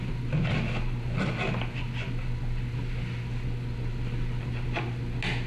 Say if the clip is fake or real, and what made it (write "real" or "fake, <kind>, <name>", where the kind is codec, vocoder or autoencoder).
real